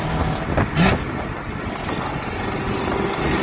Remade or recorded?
recorded